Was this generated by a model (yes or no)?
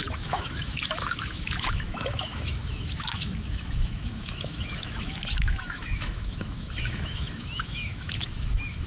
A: yes